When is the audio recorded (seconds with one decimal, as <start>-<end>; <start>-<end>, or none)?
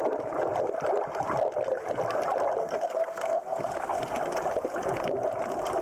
0.0-2.6; 4.0-5.8